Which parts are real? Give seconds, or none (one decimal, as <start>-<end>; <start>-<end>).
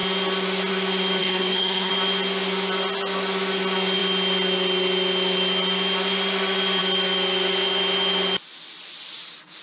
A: 0.0-1.2; 1.9-9.6